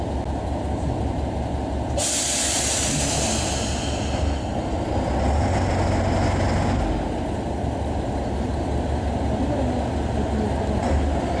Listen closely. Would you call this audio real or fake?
real